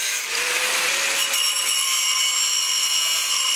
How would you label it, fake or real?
fake